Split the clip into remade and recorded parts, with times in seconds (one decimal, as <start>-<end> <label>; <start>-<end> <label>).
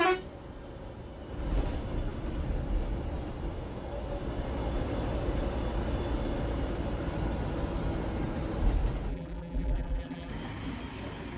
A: 0.0-9.1 recorded; 9.1-10.3 remade; 10.3-11.4 recorded